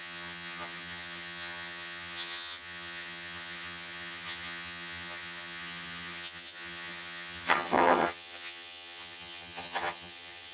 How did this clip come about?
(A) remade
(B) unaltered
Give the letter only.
A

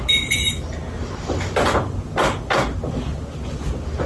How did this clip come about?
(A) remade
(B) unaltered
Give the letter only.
B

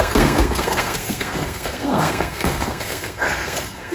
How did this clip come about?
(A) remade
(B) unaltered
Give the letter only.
A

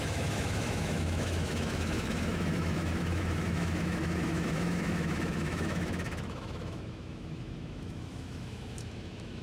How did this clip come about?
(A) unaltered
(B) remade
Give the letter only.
B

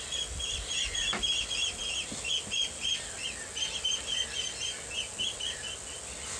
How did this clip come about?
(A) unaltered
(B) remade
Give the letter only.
A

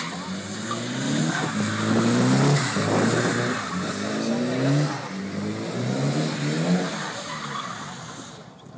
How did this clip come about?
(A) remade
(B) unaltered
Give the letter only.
B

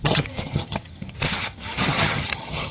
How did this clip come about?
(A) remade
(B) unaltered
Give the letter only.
A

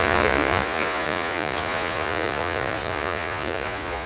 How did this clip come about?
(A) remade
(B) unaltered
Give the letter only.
A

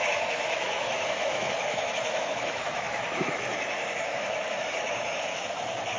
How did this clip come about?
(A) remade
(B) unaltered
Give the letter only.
A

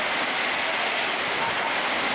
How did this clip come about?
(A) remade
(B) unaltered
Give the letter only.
B